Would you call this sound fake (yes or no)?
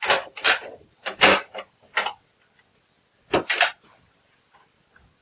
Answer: no